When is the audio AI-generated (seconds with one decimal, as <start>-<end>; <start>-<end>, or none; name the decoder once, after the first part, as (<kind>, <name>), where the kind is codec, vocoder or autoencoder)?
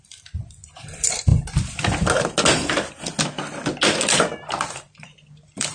0.0-1.3 (vocoder, BigVGAN v2); 4.7-5.7